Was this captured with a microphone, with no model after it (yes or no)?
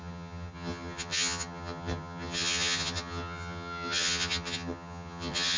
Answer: no